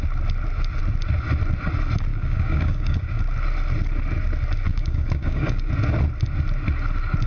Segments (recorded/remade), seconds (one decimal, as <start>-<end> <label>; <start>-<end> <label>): 0.0-2.1 recorded; 2.1-3.2 remade; 3.2-4.7 recorded; 4.7-5.7 remade; 5.7-7.3 recorded